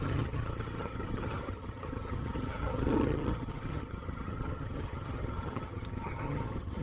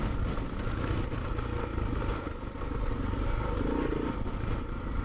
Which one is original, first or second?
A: second